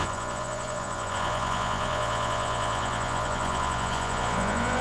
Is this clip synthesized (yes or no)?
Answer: yes